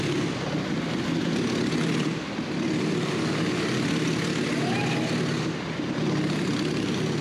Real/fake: real